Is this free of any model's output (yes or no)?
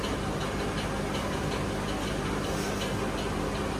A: yes